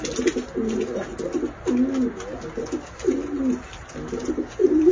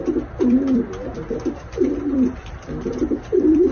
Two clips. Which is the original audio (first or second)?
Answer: first